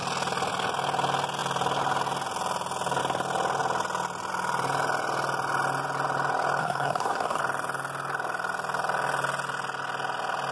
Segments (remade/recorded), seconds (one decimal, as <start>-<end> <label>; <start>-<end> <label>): 0.0-6.6 recorded; 6.6-7.4 remade; 7.4-10.5 recorded

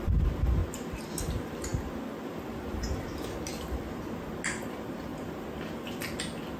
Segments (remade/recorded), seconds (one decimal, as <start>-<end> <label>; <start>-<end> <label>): 0.0-6.6 recorded

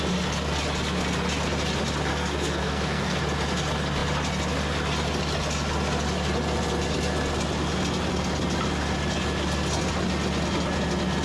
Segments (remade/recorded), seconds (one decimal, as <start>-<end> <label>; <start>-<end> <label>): 0.0-2.1 recorded; 2.1-3.2 remade; 3.2-11.2 recorded

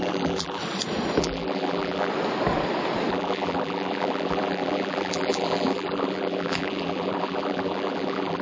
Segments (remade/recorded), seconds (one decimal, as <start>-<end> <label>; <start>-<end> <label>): 0.0-0.6 remade; 0.6-1.2 recorded; 1.2-2.1 remade; 2.1-3.1 recorded; 3.1-8.4 remade

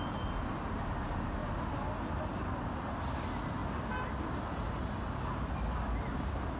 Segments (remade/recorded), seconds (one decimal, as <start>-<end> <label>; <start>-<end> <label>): 0.0-6.6 recorded

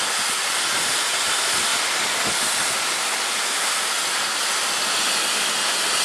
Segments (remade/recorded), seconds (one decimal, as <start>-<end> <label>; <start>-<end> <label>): 0.0-6.0 recorded

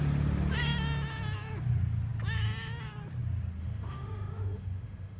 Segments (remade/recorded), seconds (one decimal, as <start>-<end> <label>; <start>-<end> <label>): 0.0-3.6 recorded; 3.6-5.2 remade